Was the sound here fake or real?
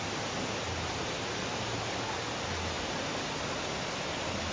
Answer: real